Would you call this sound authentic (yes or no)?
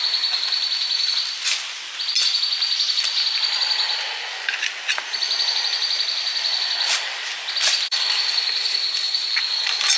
yes